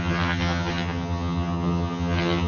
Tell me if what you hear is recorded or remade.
remade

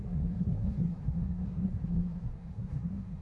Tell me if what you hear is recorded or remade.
remade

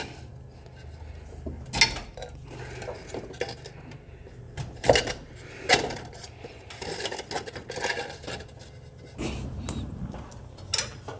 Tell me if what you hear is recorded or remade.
recorded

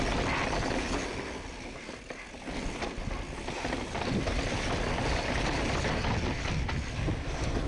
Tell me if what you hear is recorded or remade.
recorded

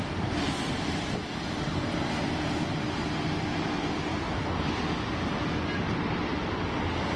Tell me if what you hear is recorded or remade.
recorded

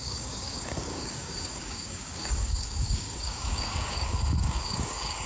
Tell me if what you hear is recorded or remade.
remade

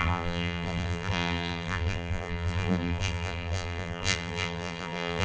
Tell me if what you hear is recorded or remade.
remade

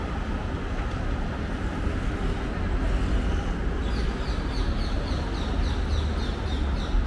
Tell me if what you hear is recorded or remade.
recorded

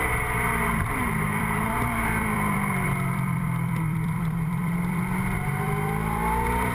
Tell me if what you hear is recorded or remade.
remade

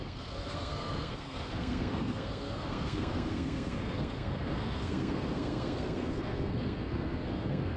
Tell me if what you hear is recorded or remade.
remade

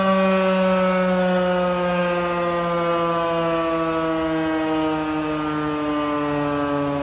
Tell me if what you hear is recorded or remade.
recorded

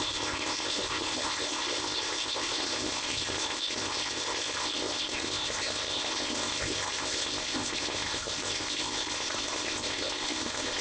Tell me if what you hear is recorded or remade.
remade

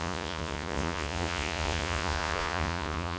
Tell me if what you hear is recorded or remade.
remade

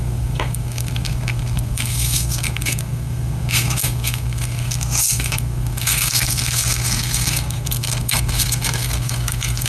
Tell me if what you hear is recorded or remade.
remade